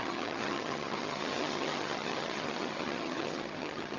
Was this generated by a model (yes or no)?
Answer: yes